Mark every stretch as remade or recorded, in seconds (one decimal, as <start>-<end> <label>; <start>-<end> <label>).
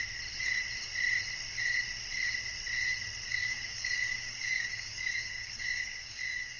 0.0-3.3 recorded; 3.3-6.6 remade